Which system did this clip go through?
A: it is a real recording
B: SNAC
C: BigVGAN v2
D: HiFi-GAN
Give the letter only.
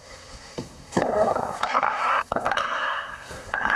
B